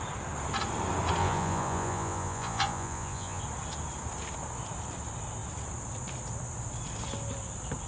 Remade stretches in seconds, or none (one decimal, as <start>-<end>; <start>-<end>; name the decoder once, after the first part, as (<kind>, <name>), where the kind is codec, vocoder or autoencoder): 1.2-3.4 (vocoder, Vocos)